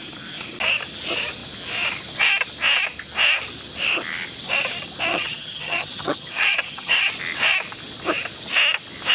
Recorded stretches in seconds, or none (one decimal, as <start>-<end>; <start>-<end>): 0.0-5.1; 7.1-9.1